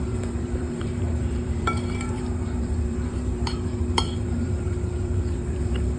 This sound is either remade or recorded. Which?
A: remade